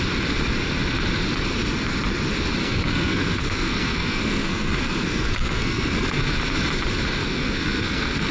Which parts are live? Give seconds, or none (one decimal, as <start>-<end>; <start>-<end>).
0.0-2.6; 6.4-7.2

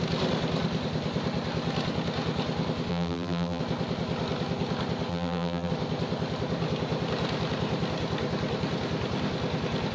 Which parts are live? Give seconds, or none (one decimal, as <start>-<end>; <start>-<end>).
0.0-2.9; 3.6-5.1; 5.7-9.9

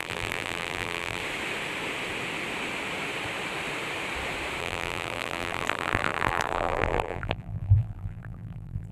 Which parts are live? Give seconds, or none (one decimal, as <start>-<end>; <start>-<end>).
1.2-4.6

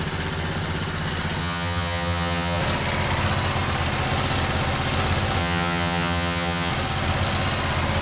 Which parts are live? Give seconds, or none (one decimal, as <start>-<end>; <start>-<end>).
0.0-1.4; 2.6-5.4; 6.7-8.0

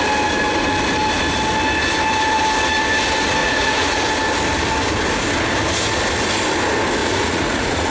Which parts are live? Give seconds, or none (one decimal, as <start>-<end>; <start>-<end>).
0.0-3.4; 4.1-7.0

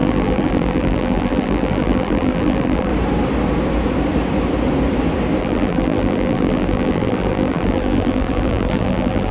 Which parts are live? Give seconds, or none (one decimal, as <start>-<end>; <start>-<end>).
2.9-5.4